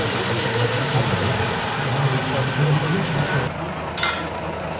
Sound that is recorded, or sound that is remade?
recorded